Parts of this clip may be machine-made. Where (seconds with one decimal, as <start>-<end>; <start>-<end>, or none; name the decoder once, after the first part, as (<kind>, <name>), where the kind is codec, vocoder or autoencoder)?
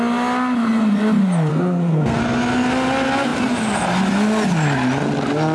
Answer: 1.5-2.2 (codec, SNAC)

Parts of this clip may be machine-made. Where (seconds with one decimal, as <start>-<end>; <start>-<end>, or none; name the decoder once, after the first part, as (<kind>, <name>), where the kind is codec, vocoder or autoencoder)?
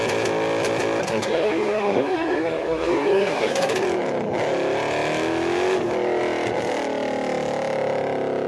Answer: 1.0-3.7 (codec, SNAC)